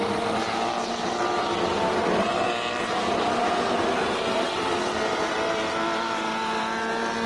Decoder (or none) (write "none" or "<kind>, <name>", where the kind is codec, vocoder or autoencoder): none